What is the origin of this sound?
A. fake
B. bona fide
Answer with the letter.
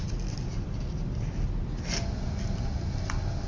B